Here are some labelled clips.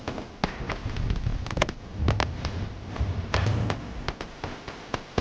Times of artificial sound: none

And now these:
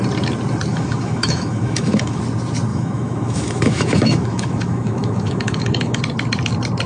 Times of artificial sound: 0.7-2.2 (autoencoder, DAC-VAE); 2.7-6.0

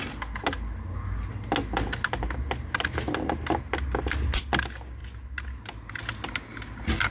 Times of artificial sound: none

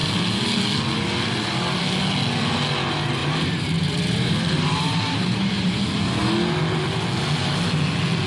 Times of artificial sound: 3.2-5.8 (vocoder, BigVGAN v2)

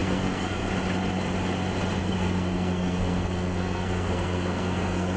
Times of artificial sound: 0.0-0.7 (codec, SNAC); 2.0-5.2

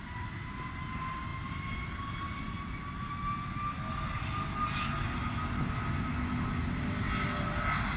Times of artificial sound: none